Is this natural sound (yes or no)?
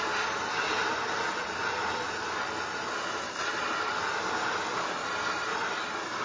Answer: yes